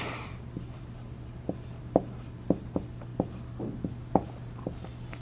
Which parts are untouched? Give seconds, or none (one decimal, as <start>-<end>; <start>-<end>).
none